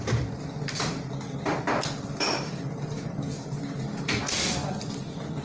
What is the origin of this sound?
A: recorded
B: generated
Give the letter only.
B